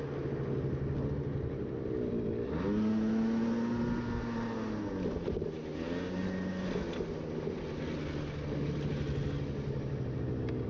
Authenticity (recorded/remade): recorded